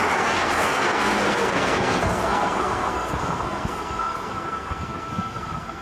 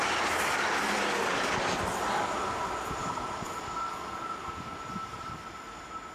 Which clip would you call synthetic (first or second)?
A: first